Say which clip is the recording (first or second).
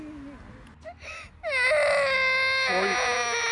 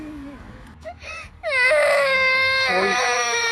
first